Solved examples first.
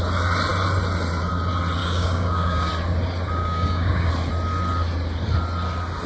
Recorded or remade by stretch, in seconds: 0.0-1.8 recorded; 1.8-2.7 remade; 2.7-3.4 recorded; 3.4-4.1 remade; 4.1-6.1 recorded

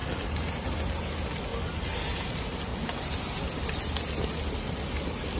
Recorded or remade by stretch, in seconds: 0.0-5.4 recorded

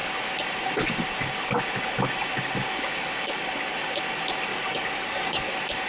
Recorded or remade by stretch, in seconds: 0.0-4.5 recorded; 4.5-5.5 remade; 5.5-5.9 recorded

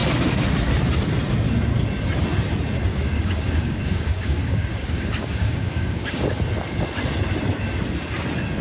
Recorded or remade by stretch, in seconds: 0.0-2.9 recorded; 2.9-6.2 remade; 6.2-8.6 recorded

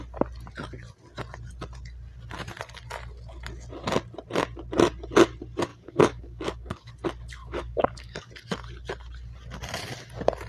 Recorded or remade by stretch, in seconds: 0.0-5.7 recorded; 5.7-6.9 remade; 6.9-7.4 recorded; 7.4-8.3 remade; 8.3-10.5 recorded